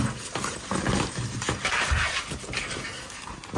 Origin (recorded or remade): recorded